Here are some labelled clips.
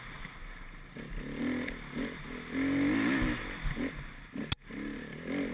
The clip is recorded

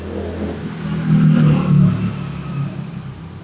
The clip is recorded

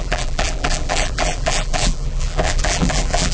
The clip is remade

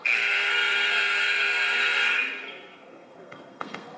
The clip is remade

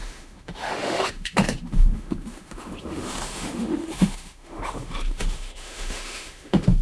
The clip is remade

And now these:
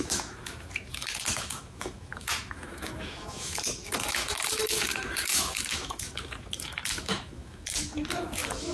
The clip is remade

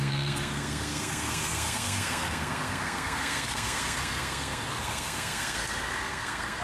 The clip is remade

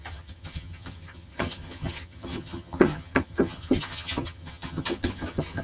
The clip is remade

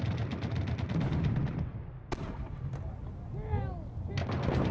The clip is recorded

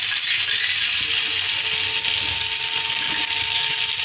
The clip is recorded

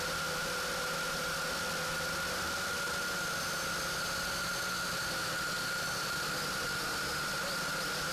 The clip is recorded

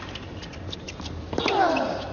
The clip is remade